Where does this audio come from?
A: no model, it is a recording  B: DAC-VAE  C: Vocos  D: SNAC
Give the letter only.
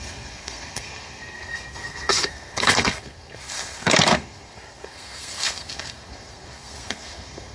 D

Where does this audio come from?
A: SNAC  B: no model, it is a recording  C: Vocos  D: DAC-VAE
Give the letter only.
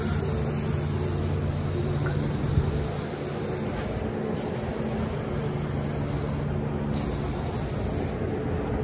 B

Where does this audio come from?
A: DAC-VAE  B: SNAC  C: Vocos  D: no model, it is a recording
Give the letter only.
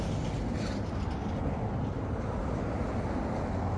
D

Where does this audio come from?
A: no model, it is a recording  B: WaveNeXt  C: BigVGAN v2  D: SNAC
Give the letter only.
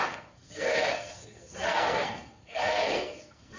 D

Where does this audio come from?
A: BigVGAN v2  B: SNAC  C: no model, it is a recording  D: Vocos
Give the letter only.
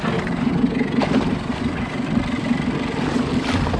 C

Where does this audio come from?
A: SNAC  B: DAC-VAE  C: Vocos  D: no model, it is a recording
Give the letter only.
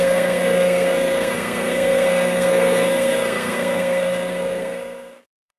A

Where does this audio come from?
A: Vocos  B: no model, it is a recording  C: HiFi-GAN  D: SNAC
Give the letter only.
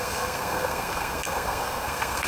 D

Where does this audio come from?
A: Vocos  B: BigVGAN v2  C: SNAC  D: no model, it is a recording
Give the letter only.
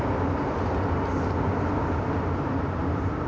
D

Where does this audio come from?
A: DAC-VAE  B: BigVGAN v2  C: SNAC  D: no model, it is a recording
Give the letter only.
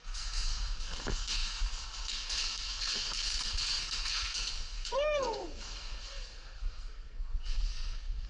C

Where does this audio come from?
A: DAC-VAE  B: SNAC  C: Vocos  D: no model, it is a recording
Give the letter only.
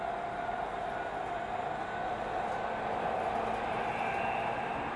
D